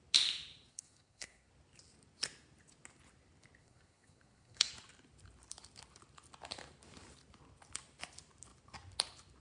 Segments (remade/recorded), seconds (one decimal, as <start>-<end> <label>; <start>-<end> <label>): 0.0-0.7 recorded; 0.7-1.5 remade; 1.5-3.6 recorded; 3.6-4.7 remade; 4.7-9.4 recorded